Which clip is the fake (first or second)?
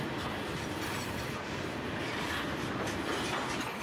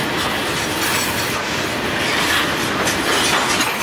first